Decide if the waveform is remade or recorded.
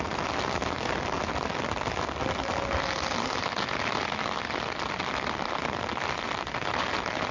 recorded